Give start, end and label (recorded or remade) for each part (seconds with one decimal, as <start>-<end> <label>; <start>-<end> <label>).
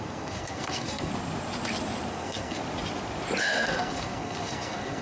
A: 0.0-1.1 remade; 1.1-2.1 recorded; 2.1-2.6 remade; 2.6-3.4 recorded; 3.4-5.0 remade